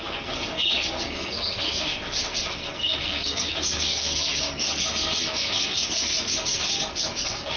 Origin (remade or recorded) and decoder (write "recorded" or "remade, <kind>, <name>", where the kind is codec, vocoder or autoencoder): remade, codec, SNAC